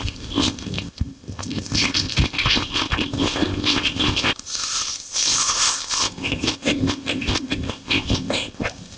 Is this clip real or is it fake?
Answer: fake